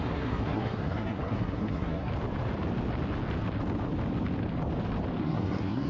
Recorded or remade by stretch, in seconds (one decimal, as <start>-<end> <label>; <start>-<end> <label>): 0.0-2.1 remade; 2.1-5.2 recorded; 5.2-5.9 remade